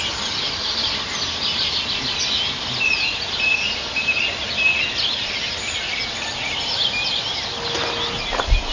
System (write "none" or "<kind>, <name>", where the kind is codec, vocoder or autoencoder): none